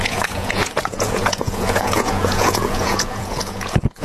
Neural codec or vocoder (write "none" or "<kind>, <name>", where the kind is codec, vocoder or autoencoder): vocoder, Vocos